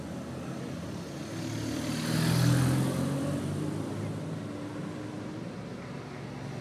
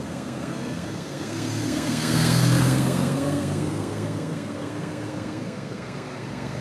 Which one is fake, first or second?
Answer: second